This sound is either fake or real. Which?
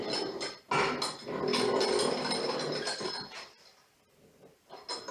real